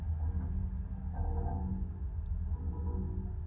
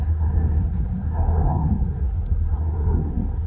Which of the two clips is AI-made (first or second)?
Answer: second